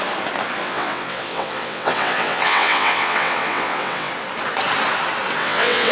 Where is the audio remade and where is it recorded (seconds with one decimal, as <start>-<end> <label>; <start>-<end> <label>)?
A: 0.0-0.6 recorded; 0.6-4.1 remade; 4.1-5.4 recorded; 5.4-5.9 remade